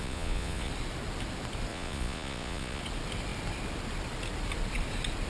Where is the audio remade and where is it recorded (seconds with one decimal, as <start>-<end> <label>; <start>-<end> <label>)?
0.0-0.7 remade; 0.7-1.7 recorded; 1.7-2.8 remade; 2.8-5.3 recorded